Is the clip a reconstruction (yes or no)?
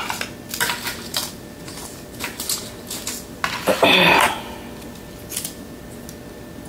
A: no